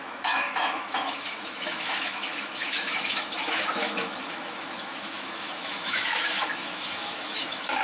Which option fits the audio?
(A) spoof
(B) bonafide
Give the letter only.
A